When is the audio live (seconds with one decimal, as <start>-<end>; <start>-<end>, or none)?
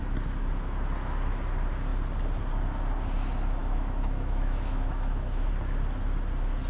0.0-3.6; 5.5-6.7